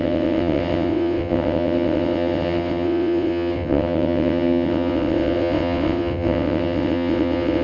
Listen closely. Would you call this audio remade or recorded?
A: remade